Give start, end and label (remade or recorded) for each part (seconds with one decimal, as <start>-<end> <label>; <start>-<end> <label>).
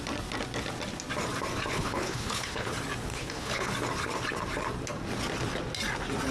0.0-1.7 recorded; 1.7-2.7 remade; 2.7-3.1 recorded; 3.1-3.7 remade; 3.7-6.3 recorded